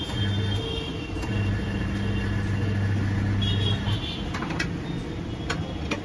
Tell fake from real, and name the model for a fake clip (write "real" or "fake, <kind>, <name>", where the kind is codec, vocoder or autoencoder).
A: real